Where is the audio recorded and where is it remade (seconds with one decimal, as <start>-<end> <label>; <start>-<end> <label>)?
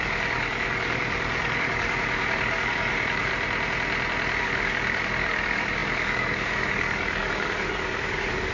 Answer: 0.0-3.3 remade; 3.3-4.4 recorded; 4.4-8.5 remade